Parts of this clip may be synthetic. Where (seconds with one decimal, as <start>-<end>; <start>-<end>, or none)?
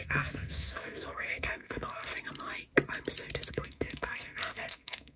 0.0-2.1; 3.5-5.2